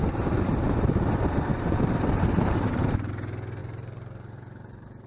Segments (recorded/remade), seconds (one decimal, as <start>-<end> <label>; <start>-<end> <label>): 0.0-1.1 remade; 1.1-1.5 recorded; 1.5-3.1 remade; 3.1-3.6 recorded; 3.6-5.1 remade